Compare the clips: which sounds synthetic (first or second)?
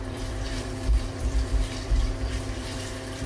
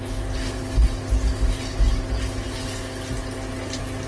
first